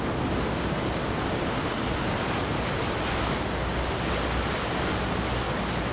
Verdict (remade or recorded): recorded